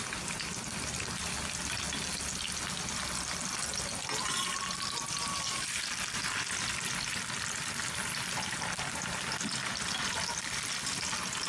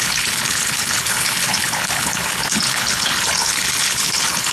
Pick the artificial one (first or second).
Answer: second